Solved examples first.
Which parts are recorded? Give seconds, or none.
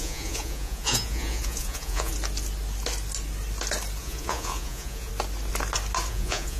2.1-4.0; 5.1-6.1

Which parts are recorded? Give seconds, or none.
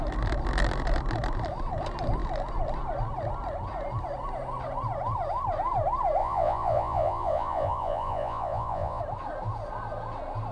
0.0-6.2; 9.0-10.5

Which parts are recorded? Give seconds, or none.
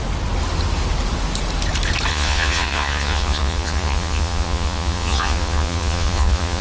0.0-2.1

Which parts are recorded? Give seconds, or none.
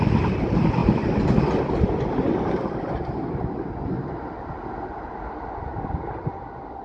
0.0-6.8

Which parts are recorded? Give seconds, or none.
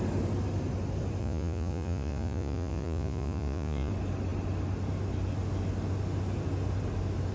0.0-1.2; 3.9-7.3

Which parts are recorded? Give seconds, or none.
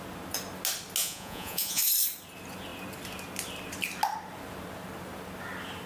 0.0-1.0; 1.9-5.9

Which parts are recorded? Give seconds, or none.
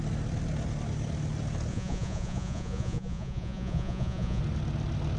0.0-1.7; 4.4-5.2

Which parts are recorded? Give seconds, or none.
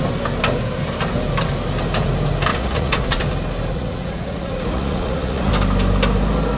0.0-2.5; 3.2-3.7; 5.5-6.6